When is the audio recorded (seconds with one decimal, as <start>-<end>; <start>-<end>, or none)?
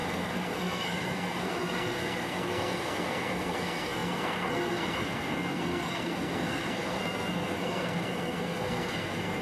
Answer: none